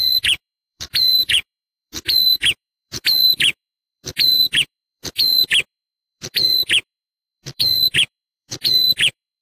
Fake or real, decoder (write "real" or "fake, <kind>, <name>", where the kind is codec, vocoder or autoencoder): fake, vocoder, Vocos